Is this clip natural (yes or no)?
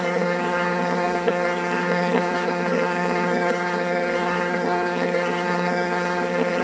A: no